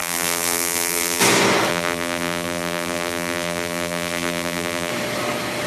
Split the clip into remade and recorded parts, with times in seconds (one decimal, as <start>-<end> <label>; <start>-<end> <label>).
0.0-1.2 remade; 1.2-1.7 recorded; 1.7-4.9 remade; 4.9-5.7 recorded